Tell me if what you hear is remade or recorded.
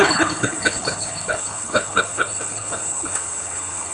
remade